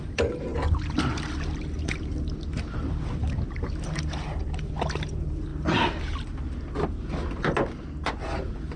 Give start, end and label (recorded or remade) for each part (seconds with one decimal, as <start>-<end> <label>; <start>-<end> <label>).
0.0-8.8 recorded